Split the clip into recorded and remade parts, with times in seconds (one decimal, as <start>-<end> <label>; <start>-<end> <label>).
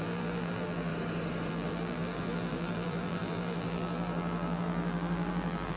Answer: 0.0-0.9 remade; 0.9-1.5 recorded; 1.5-5.8 remade